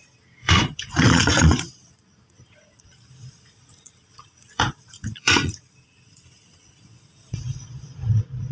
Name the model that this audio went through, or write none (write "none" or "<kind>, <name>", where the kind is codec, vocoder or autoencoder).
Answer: vocoder, Vocos